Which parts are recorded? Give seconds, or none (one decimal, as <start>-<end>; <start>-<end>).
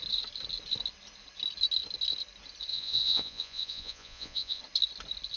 0.0-2.7; 4.6-5.4